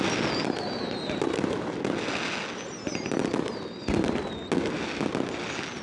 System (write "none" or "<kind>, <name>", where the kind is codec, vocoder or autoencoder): none